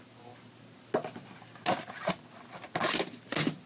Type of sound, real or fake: real